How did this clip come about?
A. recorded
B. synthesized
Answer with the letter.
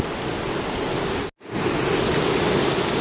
A